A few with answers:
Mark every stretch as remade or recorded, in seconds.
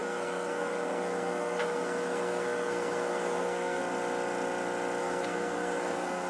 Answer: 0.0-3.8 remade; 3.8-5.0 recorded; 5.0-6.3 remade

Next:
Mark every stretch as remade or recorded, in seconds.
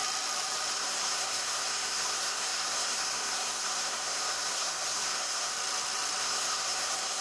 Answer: 0.0-0.7 recorded; 0.7-5.5 remade; 5.5-6.2 recorded; 6.2-7.2 remade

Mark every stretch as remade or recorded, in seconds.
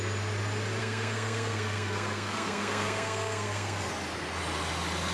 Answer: 0.0-0.8 recorded; 0.8-3.9 remade; 3.9-5.1 recorded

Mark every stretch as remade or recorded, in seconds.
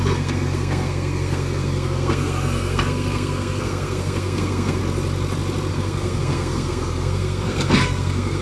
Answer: 0.0-4.8 remade; 4.8-5.7 recorded; 5.7-8.4 remade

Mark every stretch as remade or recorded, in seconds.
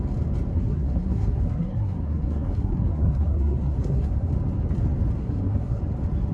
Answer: 0.0-0.5 recorded; 0.5-4.3 remade; 4.3-5.2 recorded; 5.2-5.8 remade; 5.8-6.3 recorded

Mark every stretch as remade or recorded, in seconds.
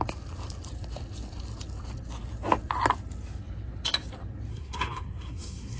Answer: 0.0-4.5 recorded; 4.5-5.8 remade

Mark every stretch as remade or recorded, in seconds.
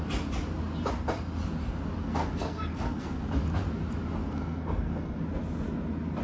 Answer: 0.0-2.0 recorded; 2.0-3.2 remade; 3.2-4.2 recorded; 4.2-5.2 remade; 5.2-6.2 recorded